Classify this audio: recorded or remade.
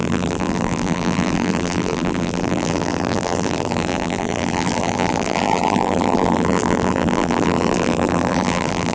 remade